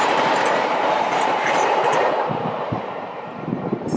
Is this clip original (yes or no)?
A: no